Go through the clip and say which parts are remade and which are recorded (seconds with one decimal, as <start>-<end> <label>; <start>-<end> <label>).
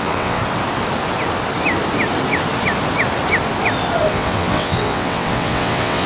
0.0-0.4 remade; 0.4-4.1 recorded; 4.1-6.1 remade